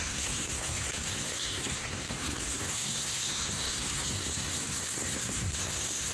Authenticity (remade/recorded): remade